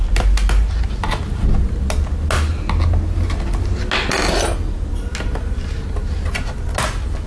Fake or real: real